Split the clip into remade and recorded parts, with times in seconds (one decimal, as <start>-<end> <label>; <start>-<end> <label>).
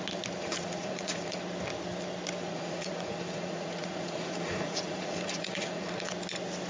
0.0-0.4 recorded; 0.4-1.4 remade; 1.4-2.4 recorded; 2.4-6.1 remade; 6.1-6.7 recorded